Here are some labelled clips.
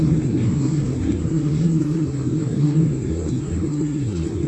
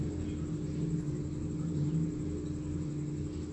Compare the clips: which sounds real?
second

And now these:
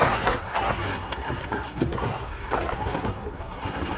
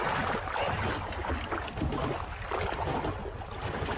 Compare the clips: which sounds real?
second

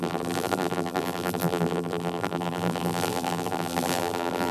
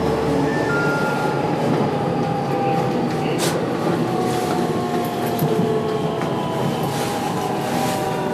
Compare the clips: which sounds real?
second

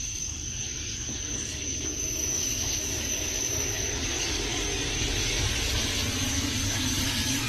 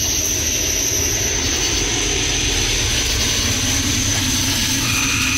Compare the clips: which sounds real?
second